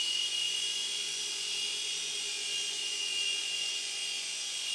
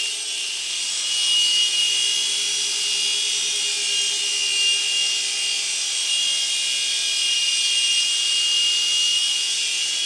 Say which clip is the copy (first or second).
first